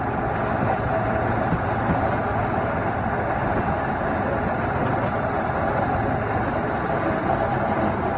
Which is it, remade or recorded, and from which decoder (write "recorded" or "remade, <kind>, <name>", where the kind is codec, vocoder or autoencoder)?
recorded